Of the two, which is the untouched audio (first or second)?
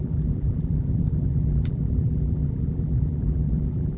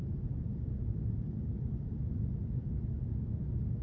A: second